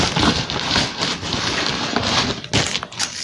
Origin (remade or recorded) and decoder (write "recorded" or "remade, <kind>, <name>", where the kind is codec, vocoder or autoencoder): recorded